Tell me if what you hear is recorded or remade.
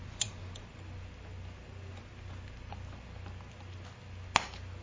recorded